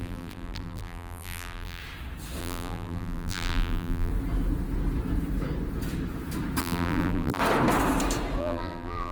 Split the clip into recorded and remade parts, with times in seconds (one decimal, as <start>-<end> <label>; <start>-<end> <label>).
0.0-1.8 remade; 1.8-2.4 recorded; 2.4-4.1 remade; 4.1-6.6 recorded; 6.6-7.4 remade; 7.4-8.4 recorded; 8.4-9.1 remade